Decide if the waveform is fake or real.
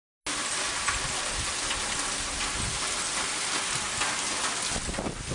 real